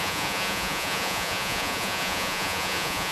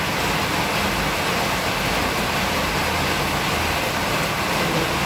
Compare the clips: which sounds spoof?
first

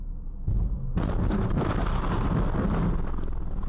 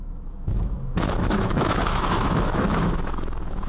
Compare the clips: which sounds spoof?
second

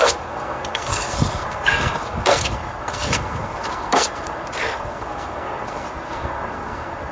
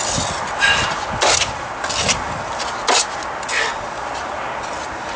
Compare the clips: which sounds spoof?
first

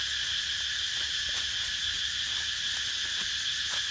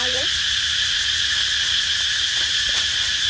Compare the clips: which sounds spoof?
second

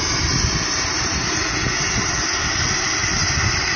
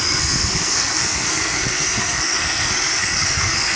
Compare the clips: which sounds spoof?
second